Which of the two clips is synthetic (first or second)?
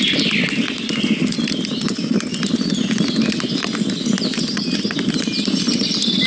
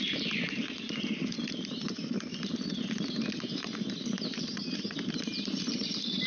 second